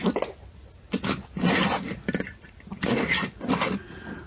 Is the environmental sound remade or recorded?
recorded